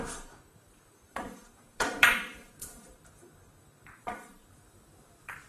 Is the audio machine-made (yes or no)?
yes